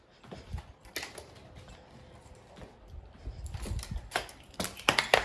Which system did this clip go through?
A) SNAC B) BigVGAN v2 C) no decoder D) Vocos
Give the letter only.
C